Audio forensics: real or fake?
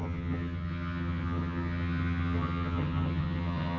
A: fake